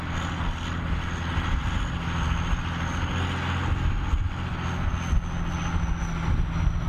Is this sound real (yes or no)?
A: yes